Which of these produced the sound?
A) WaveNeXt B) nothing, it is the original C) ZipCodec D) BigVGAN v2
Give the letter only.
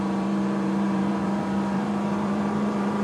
D